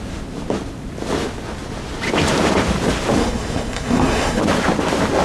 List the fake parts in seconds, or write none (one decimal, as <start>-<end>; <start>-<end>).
3.2-4.4